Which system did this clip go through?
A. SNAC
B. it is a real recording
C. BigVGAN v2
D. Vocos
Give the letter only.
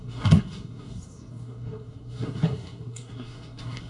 A